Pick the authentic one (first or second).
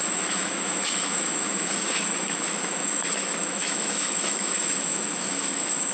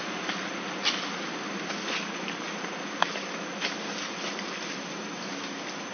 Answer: second